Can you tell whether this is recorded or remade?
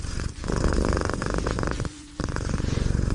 remade